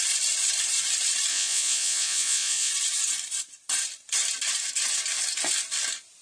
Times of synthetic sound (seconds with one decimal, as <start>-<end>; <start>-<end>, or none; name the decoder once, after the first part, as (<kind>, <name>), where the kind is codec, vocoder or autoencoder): 1.3-2.7 (vocoder, Vocos)